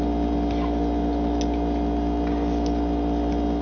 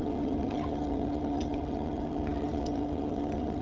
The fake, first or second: second